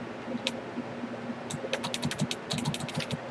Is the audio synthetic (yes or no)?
no